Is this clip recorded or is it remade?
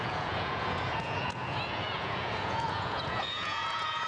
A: remade